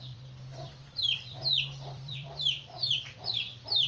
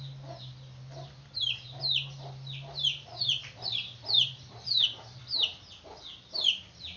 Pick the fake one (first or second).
first